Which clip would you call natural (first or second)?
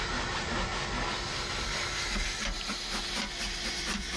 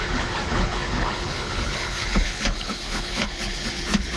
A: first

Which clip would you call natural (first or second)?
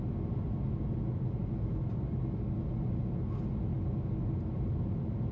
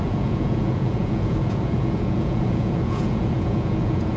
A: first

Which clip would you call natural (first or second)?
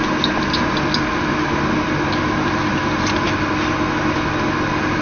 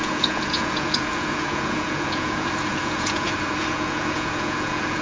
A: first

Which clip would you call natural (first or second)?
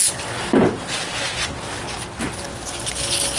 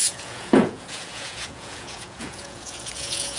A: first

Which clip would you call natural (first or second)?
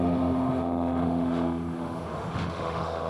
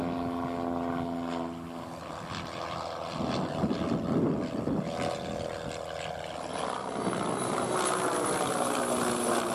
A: second